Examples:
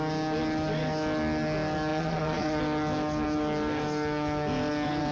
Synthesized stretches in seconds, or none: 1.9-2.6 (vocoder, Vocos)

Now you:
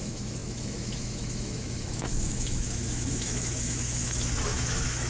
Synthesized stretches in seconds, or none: 0.0-5.1 (autoencoder, DAC-VAE)

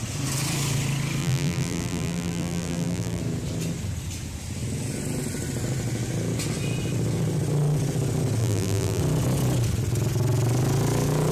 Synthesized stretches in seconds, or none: 1.2-3.2 (vocoder, BigVGAN v2); 8.4-9.0

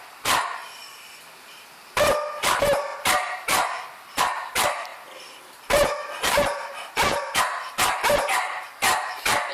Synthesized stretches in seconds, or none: none

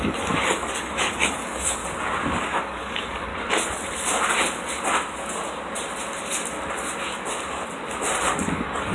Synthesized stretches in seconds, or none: 0.0-1.8 (codec, DAC); 2.4-3.3; 8.4-8.9